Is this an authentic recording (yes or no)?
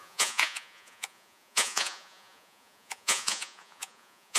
no